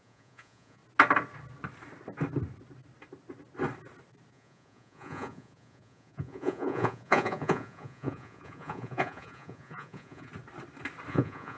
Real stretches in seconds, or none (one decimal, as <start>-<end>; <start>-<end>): 0.8-4.3; 10.3-11.1